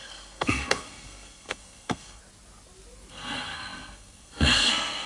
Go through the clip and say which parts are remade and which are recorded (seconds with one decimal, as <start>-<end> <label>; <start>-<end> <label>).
0.0-2.2 remade; 2.2-3.1 recorded; 3.1-5.1 remade